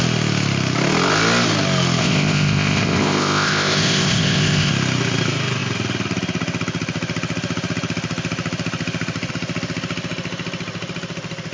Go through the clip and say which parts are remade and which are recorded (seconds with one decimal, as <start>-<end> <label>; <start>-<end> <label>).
0.0-2.0 recorded; 2.0-4.7 remade; 4.7-11.5 recorded